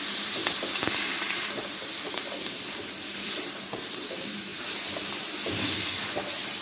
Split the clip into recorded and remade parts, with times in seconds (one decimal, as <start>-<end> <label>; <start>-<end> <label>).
0.0-4.5 remade; 4.5-6.6 recorded